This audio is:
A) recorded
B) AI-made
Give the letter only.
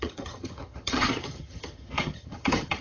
B